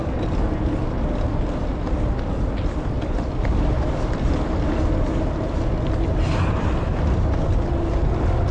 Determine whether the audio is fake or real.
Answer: real